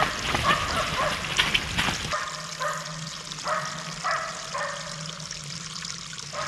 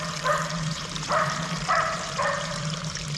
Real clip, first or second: first